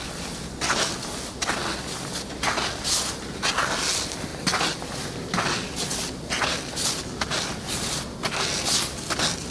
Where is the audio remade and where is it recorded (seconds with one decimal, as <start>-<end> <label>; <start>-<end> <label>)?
0.0-9.5 recorded